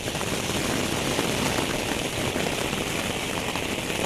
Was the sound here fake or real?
real